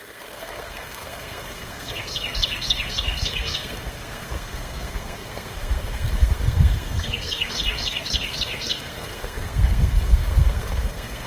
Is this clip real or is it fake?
fake